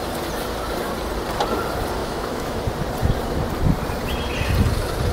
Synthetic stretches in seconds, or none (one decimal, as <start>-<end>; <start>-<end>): 2.0-2.6